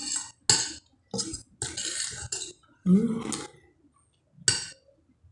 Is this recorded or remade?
recorded